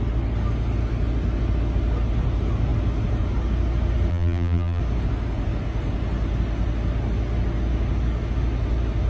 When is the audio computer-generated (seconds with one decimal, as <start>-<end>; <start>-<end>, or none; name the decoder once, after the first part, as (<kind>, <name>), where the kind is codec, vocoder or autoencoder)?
4.1-4.8 (vocoder, BigVGAN v2)